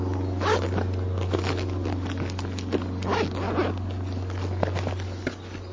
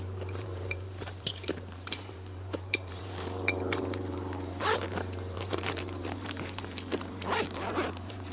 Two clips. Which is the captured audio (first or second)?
first